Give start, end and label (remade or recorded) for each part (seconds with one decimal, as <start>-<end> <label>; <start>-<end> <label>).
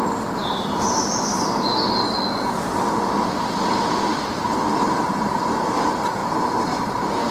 0.0-6.2 recorded; 6.2-7.3 remade